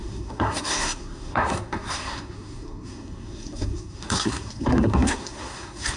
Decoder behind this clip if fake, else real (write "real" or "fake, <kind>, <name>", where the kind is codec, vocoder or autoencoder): fake, codec, SNAC